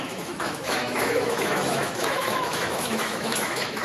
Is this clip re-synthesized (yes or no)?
yes